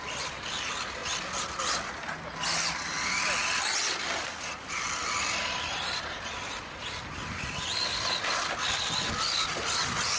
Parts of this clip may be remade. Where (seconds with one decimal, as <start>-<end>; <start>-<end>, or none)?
none